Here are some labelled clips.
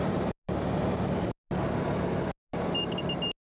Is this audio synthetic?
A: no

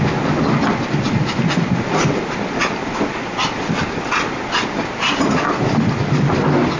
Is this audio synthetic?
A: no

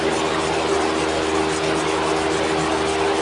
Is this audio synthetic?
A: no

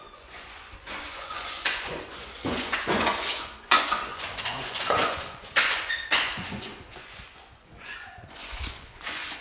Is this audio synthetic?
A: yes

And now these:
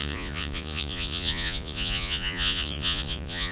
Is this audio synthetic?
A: yes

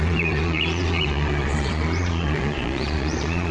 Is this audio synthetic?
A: yes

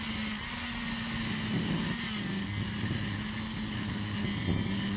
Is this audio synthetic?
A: no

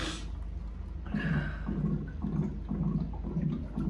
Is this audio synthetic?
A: no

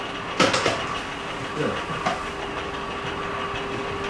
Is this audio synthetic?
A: no